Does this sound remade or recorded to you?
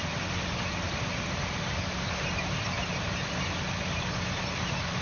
recorded